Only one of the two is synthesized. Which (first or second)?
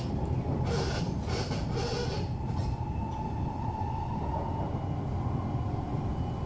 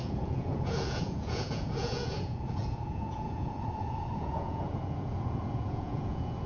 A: second